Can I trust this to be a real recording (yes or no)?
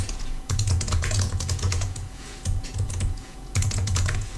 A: no